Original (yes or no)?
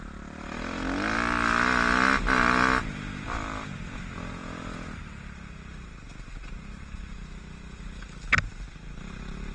yes